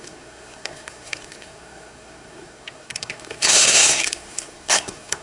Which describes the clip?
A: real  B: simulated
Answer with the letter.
B